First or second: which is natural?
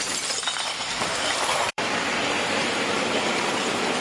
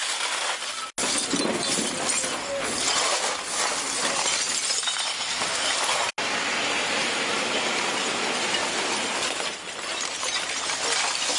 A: second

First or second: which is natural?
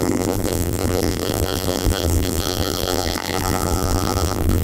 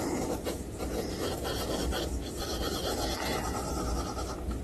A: second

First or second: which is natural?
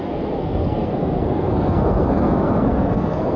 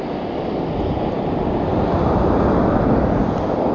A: second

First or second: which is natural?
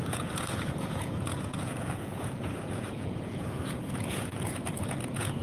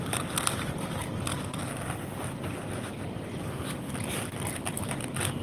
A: second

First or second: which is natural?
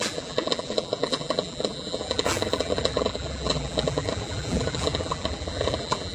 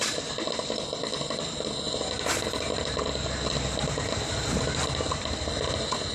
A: second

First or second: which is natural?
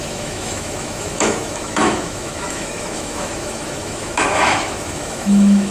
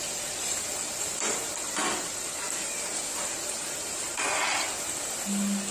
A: second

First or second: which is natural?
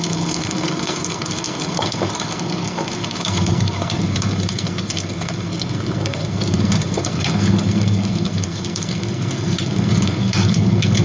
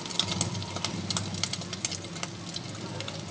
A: second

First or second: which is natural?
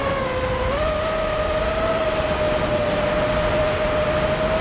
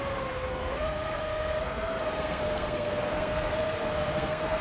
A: first